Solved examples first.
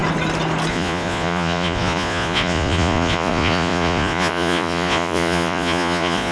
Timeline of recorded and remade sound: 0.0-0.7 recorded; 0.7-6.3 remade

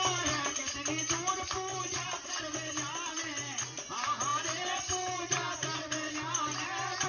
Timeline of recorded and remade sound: 0.0-7.1 recorded

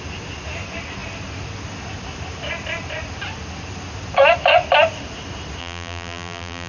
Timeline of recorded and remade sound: 0.0-5.6 recorded; 5.6-6.7 remade

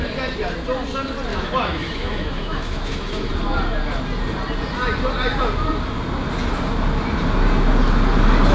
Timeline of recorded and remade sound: 0.0-1.3 recorded; 1.3-3.3 remade; 3.3-8.5 recorded

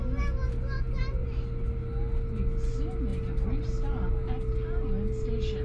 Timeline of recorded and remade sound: 0.0-5.6 recorded

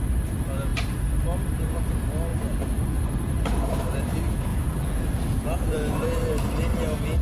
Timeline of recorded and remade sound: 0.0-2.3 recorded; 2.3-3.0 remade; 3.0-4.5 recorded; 4.5-5.9 remade; 5.9-7.2 recorded